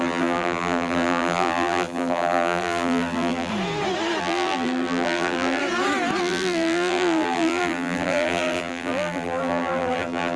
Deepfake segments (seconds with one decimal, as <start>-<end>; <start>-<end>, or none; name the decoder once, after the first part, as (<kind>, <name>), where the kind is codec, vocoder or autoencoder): 0.0-3.5 (vocoder, BigVGAN v2); 4.2-5.6; 6.2-10.4